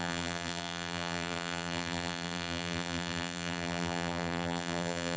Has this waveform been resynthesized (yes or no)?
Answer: yes